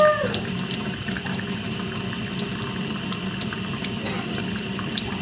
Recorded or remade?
recorded